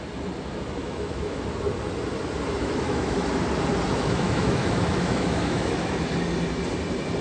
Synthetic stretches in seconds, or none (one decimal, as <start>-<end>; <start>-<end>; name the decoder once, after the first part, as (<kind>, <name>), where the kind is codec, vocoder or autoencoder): 0.8-1.4 (autoencoder, DAC-VAE); 2.6-3.3; 3.9-6.1